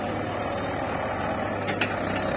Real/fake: real